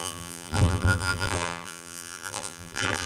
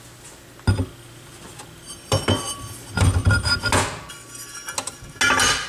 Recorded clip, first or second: second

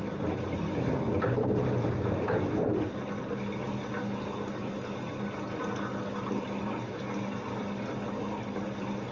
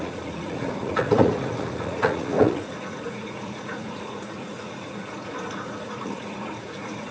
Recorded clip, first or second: first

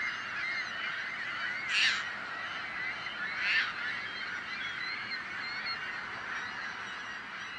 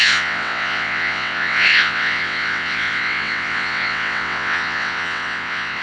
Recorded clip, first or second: first